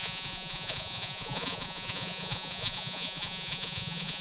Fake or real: fake